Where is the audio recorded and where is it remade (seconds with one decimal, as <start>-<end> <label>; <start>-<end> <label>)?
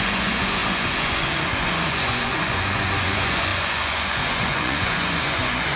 0.0-5.8 remade